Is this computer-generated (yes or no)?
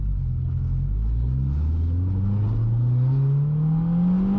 no